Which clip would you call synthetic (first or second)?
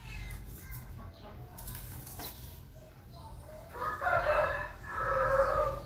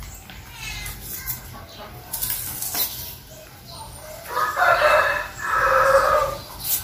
first